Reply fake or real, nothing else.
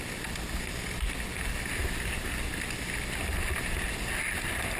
real